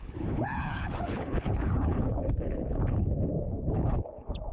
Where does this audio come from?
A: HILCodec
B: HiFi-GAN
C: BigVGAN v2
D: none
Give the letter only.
A